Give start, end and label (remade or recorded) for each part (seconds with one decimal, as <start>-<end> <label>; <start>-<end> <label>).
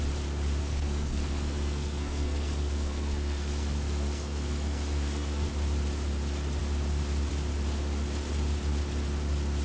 0.0-0.6 recorded; 0.6-5.5 remade; 5.5-9.6 recorded